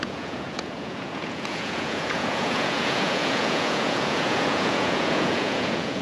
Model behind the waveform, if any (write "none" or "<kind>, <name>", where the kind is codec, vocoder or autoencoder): vocoder, Vocos